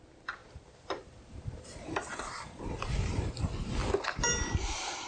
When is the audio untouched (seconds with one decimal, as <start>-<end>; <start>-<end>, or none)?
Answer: 0.0-0.4; 3.4-5.1